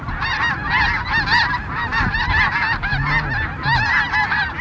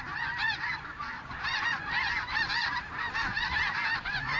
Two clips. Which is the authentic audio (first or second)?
first